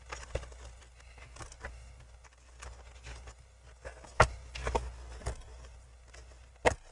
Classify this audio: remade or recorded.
recorded